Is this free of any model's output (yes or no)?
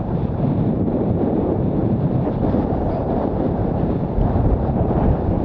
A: no